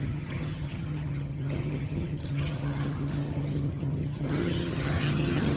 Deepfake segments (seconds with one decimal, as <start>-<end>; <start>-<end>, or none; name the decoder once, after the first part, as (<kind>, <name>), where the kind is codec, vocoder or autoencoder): 0.0-5.6 (vocoder, HiFi-GAN)